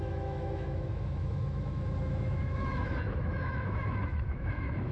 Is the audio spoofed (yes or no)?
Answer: yes